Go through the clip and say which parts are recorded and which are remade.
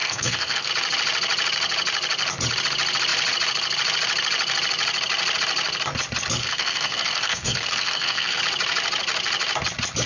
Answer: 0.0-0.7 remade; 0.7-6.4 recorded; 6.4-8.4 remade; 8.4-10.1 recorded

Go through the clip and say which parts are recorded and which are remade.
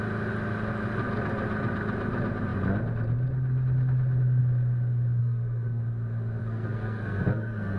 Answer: 0.0-5.2 recorded; 5.2-5.8 remade; 5.8-6.4 recorded; 6.4-7.8 remade